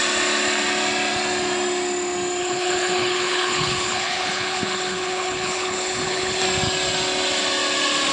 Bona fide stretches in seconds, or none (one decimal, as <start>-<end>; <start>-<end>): 0.0-2.4; 6.4-8.1